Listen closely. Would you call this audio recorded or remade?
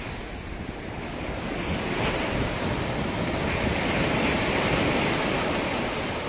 recorded